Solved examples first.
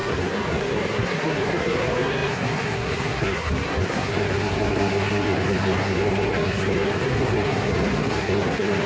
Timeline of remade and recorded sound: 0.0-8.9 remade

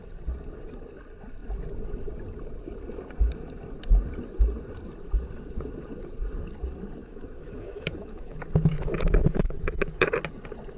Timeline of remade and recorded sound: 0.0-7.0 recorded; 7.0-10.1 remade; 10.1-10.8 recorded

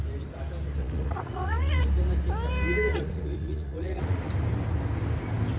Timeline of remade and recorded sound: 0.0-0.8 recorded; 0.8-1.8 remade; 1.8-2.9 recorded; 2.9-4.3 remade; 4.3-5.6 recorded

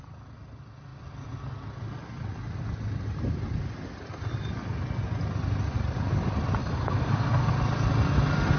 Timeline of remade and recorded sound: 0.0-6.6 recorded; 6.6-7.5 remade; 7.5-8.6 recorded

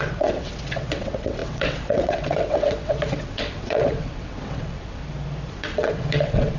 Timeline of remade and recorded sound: 0.0-5.0 remade; 5.0-5.5 recorded; 5.5-6.6 remade

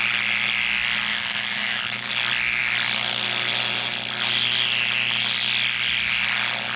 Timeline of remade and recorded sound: 0.0-1.1 recorded; 1.1-2.1 remade; 2.1-6.8 recorded

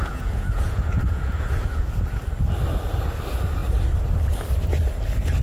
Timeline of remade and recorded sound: 0.0-2.2 remade; 2.2-5.4 recorded

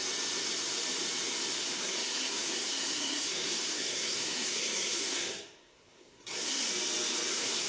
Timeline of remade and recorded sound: 0.0-1.6 recorded; 1.6-6.7 remade; 6.7-7.3 recorded; 7.3-7.7 remade